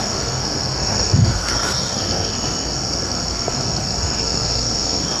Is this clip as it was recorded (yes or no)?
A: no